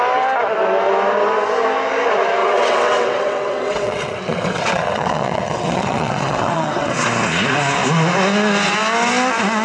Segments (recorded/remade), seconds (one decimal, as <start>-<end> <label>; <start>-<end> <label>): 0.0-2.4 recorded; 2.4-6.9 remade; 6.9-9.6 recorded